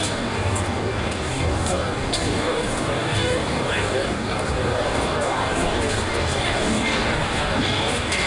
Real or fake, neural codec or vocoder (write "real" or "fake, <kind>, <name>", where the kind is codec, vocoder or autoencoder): fake, codec, DAC